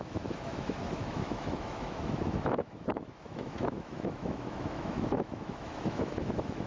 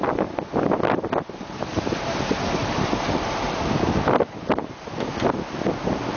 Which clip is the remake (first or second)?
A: first